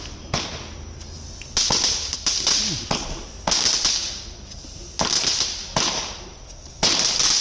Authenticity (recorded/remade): recorded